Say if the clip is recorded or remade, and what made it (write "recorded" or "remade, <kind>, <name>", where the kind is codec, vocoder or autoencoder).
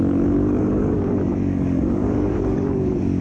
remade, codec, DAC